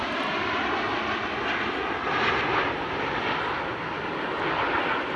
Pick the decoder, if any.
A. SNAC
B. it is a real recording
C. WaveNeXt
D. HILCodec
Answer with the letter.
B